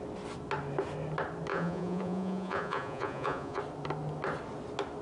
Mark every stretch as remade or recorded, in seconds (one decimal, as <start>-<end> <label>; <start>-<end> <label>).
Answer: 0.0-1.5 recorded; 1.5-3.6 remade; 3.6-5.0 recorded